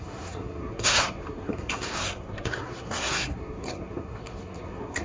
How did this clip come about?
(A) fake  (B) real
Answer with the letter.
A